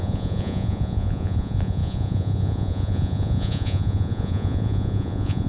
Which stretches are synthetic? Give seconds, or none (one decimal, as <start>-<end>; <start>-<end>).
0.0-5.5